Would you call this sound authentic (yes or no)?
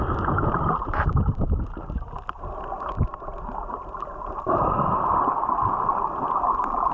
yes